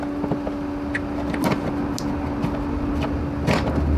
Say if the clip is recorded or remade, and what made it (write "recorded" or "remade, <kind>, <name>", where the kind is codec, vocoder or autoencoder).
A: recorded